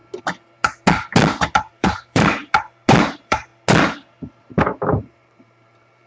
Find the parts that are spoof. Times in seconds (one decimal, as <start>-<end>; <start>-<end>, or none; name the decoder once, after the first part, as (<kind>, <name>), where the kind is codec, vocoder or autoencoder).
1.7-2.4 (vocoder, BigVGAN v2); 3.1-3.5; 4.4-6.1